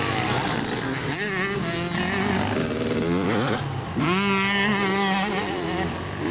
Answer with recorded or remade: recorded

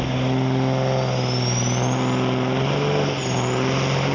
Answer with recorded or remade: recorded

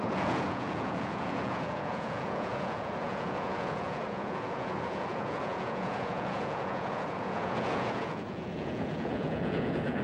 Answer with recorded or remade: remade